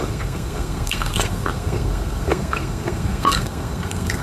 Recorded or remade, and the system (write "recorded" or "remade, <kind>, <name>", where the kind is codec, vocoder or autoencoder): remade, codec, SNAC